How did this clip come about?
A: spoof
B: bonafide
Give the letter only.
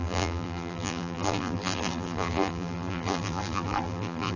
A